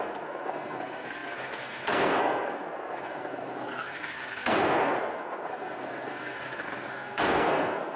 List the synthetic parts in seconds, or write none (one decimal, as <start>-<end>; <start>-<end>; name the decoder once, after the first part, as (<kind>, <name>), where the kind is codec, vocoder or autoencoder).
0.0-8.0 (codec, SNAC)